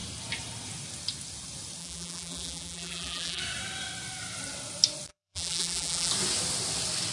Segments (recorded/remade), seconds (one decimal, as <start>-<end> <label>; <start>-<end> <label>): 0.0-1.8 recorded; 1.8-3.4 remade; 3.4-5.1 recorded; 5.1-6.1 remade; 6.1-7.1 recorded